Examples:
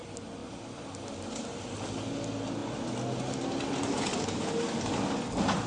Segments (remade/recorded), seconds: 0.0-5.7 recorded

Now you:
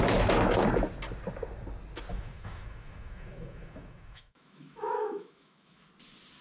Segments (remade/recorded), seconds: 0.0-2.1 recorded; 2.1-5.9 remade; 5.9-6.4 recorded

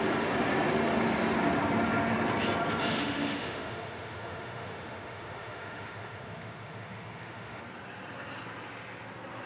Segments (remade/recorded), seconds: 0.0-2.8 recorded; 2.8-7.6 remade; 7.6-9.5 recorded

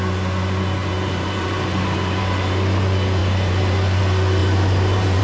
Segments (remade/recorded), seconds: 0.0-0.8 recorded; 0.8-2.2 remade; 2.2-3.2 recorded; 3.2-4.0 remade; 4.0-4.4 recorded; 4.4-5.2 remade